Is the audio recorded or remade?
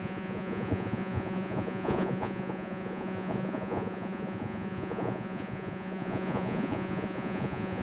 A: remade